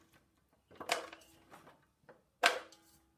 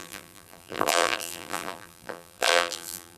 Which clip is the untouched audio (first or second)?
first